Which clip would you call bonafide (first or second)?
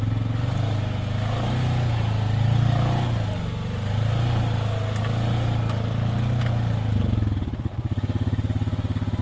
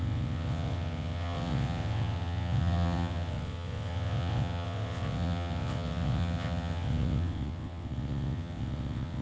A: first